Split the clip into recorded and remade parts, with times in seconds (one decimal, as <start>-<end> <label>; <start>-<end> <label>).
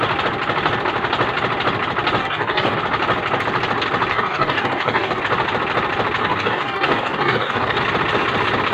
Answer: 0.0-2.2 recorded; 2.2-2.8 remade; 2.8-4.1 recorded; 4.1-5.2 remade; 5.2-6.2 recorded; 6.2-7.8 remade; 7.8-8.7 recorded